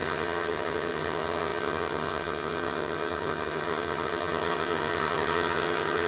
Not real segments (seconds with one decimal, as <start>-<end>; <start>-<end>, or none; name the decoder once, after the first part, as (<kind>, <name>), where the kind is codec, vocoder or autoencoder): 0.0-6.1 (vocoder, HiFi-GAN)